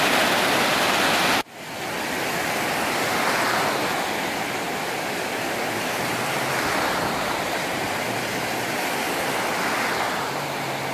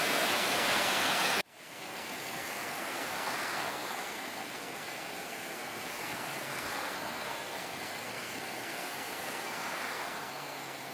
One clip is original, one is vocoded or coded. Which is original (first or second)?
first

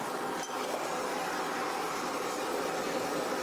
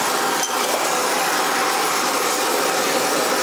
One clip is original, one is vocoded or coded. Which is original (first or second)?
first